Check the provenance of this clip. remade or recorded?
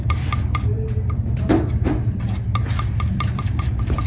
remade